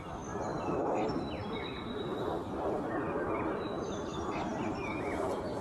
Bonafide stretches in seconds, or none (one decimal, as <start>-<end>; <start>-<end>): 0.0-2.1; 2.9-5.6